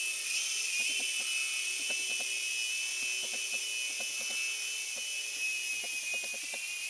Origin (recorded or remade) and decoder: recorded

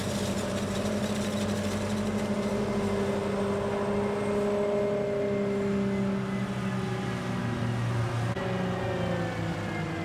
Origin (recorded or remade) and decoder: recorded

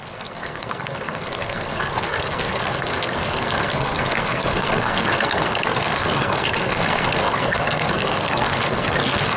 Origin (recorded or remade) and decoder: remade, codec, SNAC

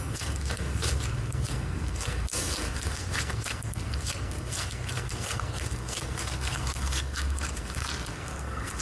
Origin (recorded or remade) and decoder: remade, codec, SNAC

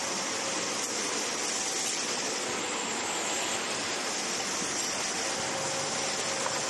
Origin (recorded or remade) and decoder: recorded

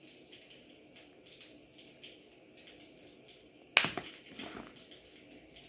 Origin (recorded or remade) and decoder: recorded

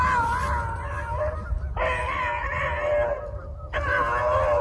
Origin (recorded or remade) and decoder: recorded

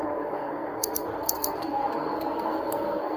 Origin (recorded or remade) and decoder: remade, codec, SNAC